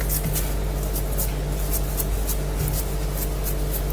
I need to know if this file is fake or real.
real